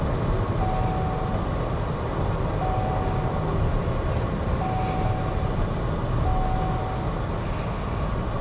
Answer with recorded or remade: recorded